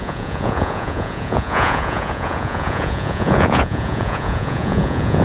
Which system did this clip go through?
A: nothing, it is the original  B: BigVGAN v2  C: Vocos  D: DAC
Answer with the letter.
C